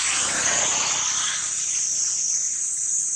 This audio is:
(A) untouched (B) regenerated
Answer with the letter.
A